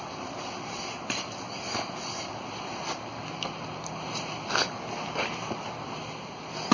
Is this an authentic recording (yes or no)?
yes